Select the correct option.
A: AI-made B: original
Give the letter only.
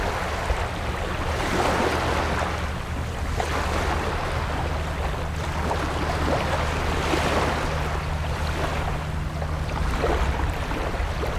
B